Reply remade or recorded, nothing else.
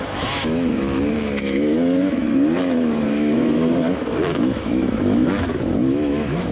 remade